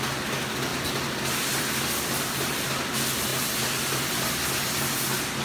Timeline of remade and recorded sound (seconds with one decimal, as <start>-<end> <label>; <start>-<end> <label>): 0.0-5.4 recorded